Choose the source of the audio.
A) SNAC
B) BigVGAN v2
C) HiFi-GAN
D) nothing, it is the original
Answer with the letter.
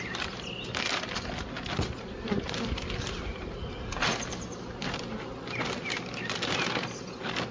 D